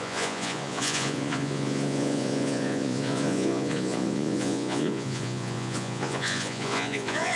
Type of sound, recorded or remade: remade